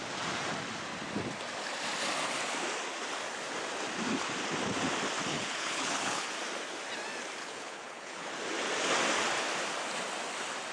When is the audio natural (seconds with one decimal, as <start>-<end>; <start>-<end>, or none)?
0.0-5.3; 6.3-7.4; 8.3-10.7